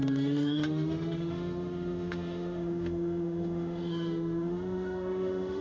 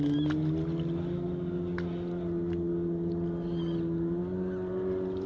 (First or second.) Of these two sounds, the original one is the second